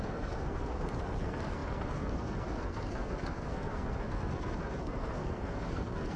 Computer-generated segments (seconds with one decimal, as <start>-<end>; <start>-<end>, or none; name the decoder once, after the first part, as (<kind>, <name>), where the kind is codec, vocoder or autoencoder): 0.0-6.2 (codec, SNAC)